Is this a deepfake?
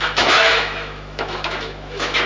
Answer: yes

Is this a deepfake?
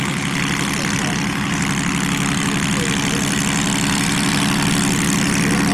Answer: no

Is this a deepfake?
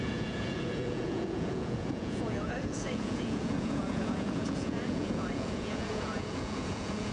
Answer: yes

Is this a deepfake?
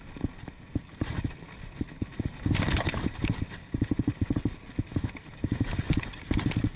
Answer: no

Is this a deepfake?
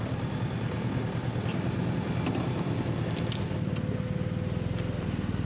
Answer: no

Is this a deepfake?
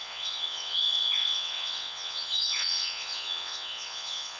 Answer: yes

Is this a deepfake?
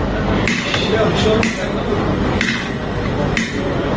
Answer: no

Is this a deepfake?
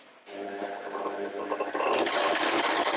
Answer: no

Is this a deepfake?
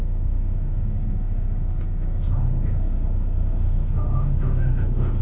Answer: yes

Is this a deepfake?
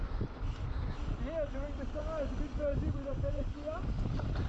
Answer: no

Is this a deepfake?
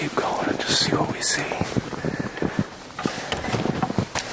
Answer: no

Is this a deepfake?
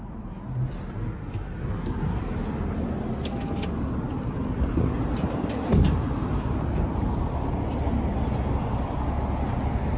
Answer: no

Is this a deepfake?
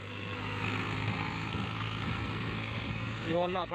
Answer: yes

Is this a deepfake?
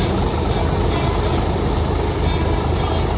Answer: no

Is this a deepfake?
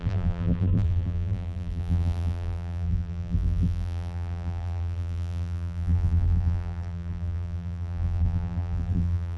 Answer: yes